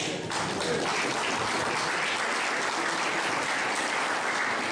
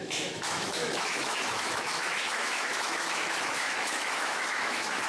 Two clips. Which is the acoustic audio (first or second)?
first